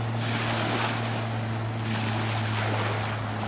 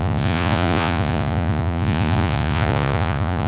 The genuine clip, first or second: first